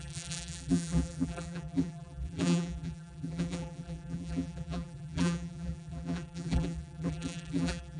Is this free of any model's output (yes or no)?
no